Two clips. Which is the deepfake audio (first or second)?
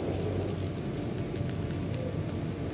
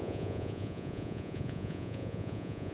second